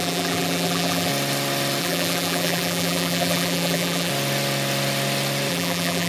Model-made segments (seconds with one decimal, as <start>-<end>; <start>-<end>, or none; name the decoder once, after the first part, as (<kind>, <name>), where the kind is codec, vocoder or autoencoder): 0.0-1.1 (vocoder, BigVGAN v2); 1.8-4.1; 5.5-6.1